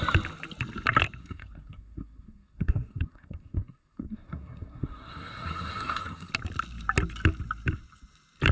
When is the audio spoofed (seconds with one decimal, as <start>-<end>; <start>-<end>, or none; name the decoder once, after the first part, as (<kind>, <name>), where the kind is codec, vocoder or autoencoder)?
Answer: 1.2-6.3 (codec, SNAC)